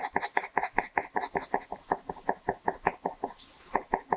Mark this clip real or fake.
real